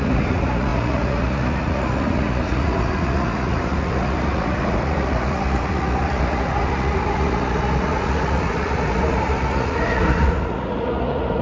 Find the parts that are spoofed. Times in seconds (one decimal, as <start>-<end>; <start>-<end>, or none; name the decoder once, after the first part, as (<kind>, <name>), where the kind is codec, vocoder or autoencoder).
0.0-11.4 (vocoder, Vocos)